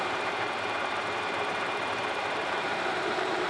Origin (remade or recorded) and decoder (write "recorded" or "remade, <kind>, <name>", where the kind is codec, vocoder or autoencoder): remade, vocoder, BigVGAN v2